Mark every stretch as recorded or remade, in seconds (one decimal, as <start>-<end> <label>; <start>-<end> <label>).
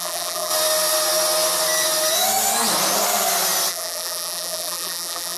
0.0-0.5 remade; 0.5-3.7 recorded; 3.7-5.4 remade